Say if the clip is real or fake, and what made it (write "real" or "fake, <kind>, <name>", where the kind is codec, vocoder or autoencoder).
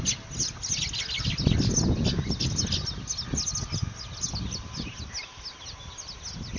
real